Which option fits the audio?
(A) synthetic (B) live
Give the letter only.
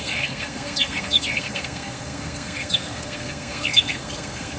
A